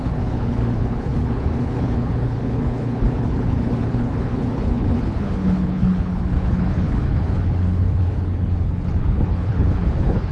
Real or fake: fake